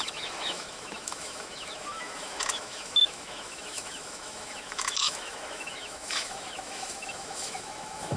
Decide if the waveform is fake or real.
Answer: fake